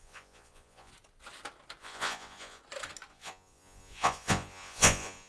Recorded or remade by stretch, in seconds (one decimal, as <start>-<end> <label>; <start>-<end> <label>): 0.0-0.9 remade; 0.9-1.8 recorded; 1.8-2.6 remade; 2.6-3.1 recorded; 3.1-5.3 remade